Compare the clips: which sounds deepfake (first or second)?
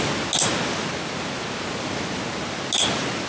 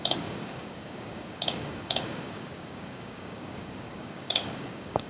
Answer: second